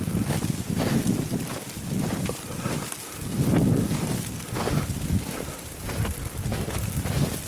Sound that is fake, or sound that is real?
real